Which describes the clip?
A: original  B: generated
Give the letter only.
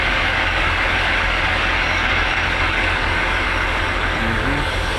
B